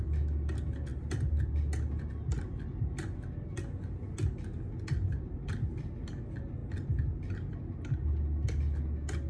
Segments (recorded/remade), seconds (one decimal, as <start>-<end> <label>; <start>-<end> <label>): 0.0-9.3 recorded